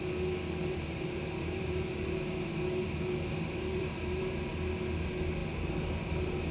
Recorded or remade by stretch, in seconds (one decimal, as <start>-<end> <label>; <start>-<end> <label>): 0.0-0.6 recorded; 0.6-4.5 remade; 4.5-6.5 recorded